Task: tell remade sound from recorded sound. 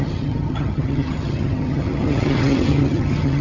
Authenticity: remade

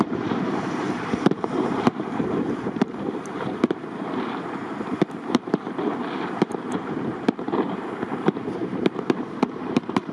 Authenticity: remade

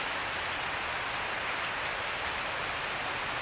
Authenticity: recorded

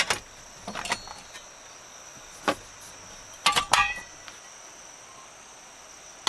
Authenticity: recorded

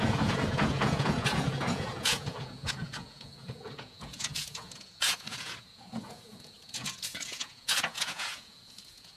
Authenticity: remade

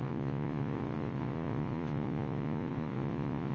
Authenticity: remade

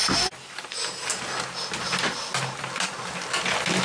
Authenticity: recorded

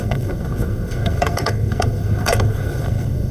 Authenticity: remade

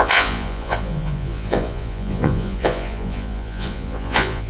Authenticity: remade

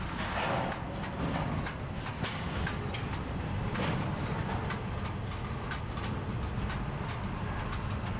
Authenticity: recorded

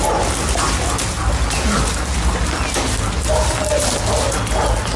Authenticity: recorded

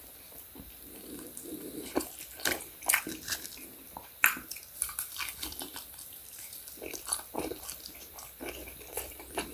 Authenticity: remade